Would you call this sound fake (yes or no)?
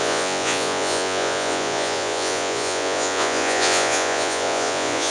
yes